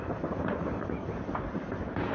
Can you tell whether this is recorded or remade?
remade